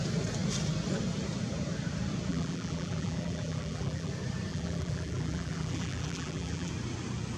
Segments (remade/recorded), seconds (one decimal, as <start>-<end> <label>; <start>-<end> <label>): 0.0-2.3 recorded; 2.3-4.1 remade; 4.1-4.5 recorded; 4.5-6.7 remade; 6.7-7.4 recorded